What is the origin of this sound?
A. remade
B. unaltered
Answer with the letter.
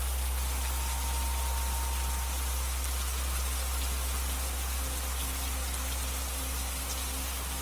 B